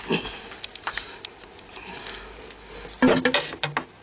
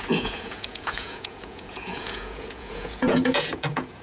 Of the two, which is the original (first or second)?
first